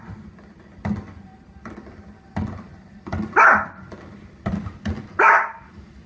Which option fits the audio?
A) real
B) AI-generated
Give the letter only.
B